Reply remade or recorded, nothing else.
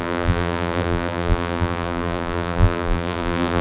remade